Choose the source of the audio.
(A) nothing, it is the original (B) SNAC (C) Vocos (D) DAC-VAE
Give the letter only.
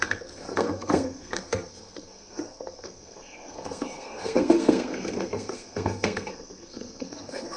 B